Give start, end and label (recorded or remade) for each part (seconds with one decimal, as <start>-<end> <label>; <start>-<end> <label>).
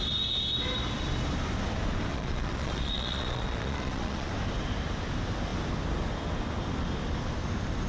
0.0-2.1 recorded; 2.1-4.3 remade; 4.3-7.9 recorded